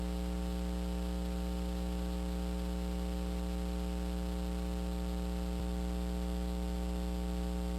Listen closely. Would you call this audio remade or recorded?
recorded